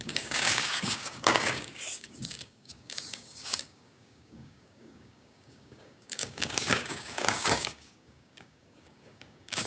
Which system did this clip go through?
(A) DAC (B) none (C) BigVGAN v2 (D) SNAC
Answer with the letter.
A